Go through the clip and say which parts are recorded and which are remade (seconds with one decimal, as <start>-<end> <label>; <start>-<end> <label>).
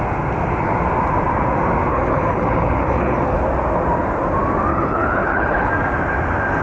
0.0-1.9 recorded; 1.9-3.4 remade; 3.4-4.7 recorded; 4.7-5.7 remade; 5.7-6.6 recorded